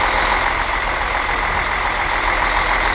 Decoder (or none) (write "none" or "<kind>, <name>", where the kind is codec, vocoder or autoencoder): none